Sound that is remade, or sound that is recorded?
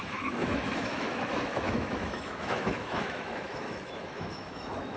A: remade